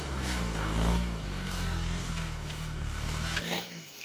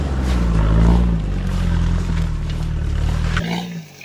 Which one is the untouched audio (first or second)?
second